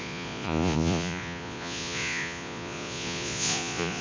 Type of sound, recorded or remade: remade